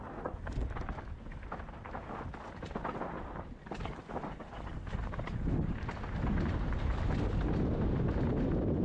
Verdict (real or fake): real